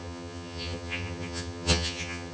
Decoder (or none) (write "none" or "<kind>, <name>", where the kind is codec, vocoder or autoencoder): vocoder, HiFi-GAN